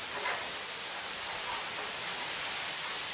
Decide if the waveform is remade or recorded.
recorded